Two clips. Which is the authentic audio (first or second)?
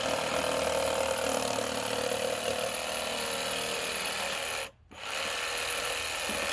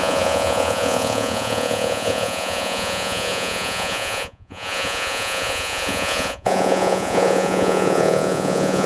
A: first